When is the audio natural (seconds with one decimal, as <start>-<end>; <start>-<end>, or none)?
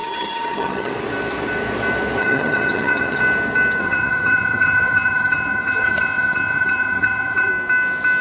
0.9-2.2; 3.2-3.8; 7.5-8.2